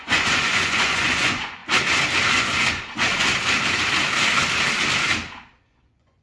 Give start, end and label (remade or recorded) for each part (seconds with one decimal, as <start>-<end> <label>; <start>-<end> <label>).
0.0-1.6 remade; 1.6-2.3 recorded; 2.3-3.3 remade; 3.3-5.6 recorded; 5.6-6.2 remade

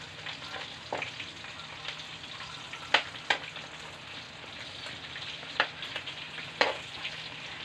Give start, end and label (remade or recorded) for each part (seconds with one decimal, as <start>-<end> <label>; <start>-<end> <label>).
0.0-5.9 recorded; 5.9-7.1 remade; 7.1-7.6 recorded